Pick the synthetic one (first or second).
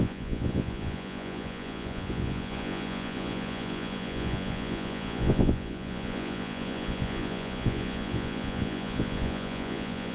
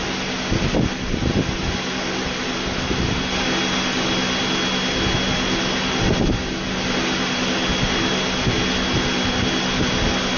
first